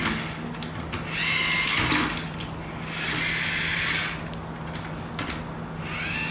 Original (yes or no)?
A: yes